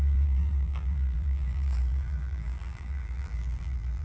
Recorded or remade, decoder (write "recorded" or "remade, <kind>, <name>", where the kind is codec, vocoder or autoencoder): remade, vocoder, BigVGAN v2